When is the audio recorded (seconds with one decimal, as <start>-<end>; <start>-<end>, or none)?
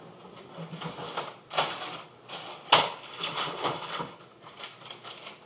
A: 0.0-2.8; 4.2-5.5